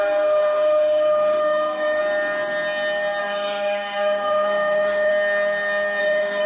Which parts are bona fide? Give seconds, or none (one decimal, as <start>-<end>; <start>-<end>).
2.0-3.2; 5.1-6.0

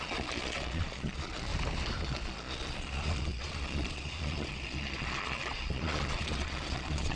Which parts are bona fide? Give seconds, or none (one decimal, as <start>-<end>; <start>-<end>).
1.5-2.0

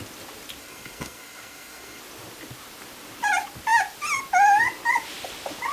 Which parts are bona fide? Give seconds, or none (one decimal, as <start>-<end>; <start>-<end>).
0.0-0.6; 2.0-5.7

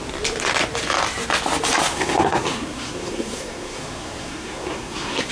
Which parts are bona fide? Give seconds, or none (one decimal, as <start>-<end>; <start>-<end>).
0.0-1.9

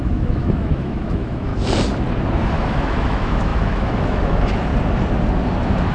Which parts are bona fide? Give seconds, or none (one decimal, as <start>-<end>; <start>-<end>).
1.5-2.5; 4.7-5.9

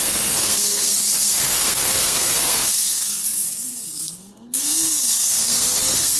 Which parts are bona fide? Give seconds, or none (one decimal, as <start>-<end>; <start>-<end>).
none

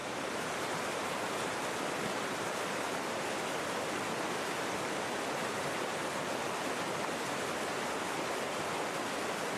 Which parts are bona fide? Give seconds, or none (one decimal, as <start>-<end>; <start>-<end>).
1.6-9.6

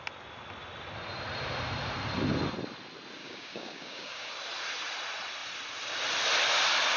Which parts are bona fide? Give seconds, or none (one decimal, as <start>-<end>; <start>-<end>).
0.0-3.2; 4.3-7.0